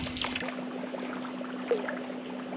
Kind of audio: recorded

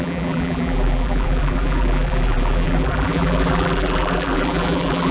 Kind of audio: remade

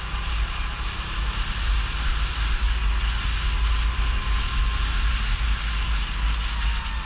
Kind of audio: recorded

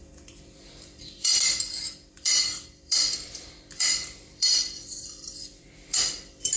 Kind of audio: remade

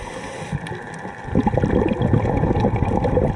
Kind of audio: recorded